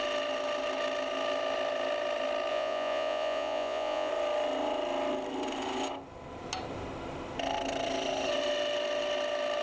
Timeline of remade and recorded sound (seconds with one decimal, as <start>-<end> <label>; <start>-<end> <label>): 0.0-2.5 recorded; 2.5-4.1 remade; 4.1-9.6 recorded